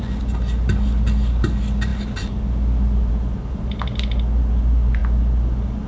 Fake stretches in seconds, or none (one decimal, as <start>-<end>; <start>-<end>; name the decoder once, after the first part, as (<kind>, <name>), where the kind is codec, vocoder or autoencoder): none